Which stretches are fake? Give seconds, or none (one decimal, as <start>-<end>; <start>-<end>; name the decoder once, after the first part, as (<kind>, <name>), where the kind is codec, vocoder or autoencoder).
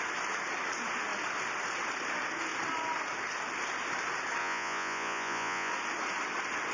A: 4.4-5.7 (vocoder, Vocos)